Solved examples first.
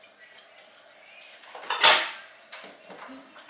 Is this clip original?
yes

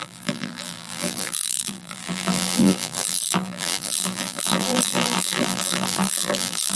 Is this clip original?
no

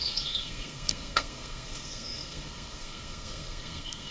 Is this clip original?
no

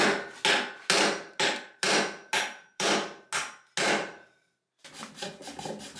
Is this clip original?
yes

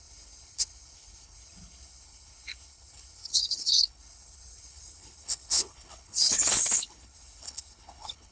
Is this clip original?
no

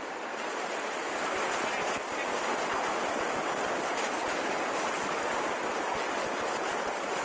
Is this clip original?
yes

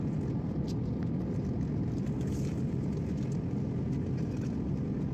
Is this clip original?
yes